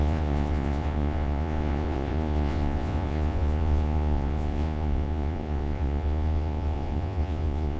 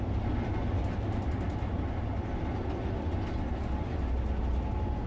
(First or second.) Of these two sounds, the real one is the second